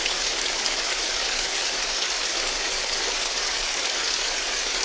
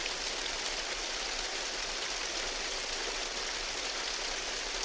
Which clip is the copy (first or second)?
first